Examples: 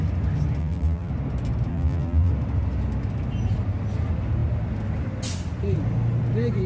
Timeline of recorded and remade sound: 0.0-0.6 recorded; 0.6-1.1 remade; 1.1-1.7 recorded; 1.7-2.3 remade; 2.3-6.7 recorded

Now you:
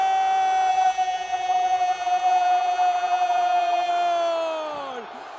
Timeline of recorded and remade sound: 0.0-0.7 recorded; 0.7-3.9 remade; 3.9-5.4 recorded

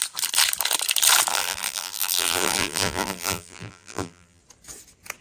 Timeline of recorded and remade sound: 0.0-1.3 recorded; 1.3-4.4 remade; 4.4-5.2 recorded

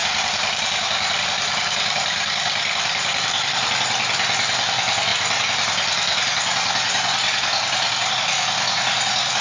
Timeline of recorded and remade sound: 0.0-3.7 remade; 3.7-9.4 recorded

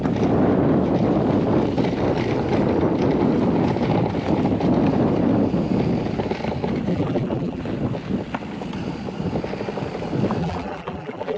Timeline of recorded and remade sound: 0.0-6.9 recorded; 6.9-7.6 remade; 7.6-10.4 recorded; 10.4-11.4 remade

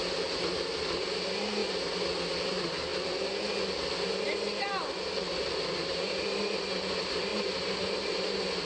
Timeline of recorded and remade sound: 0.0-1.6 remade; 1.6-2.4 recorded; 2.4-2.9 remade; 2.9-5.7 recorded; 5.7-8.6 remade